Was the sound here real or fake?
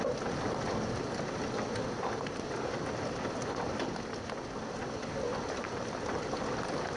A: real